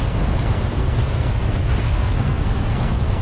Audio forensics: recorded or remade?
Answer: remade